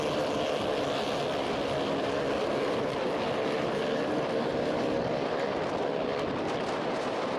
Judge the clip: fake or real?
real